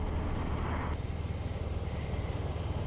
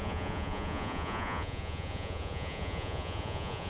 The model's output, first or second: second